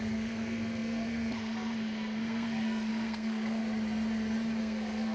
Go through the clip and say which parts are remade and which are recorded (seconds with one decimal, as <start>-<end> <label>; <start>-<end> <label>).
0.0-3.6 remade; 3.6-4.6 recorded; 4.6-5.1 remade